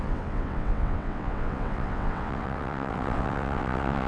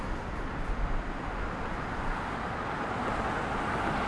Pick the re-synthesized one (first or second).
first